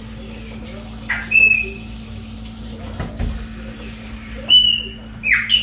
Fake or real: real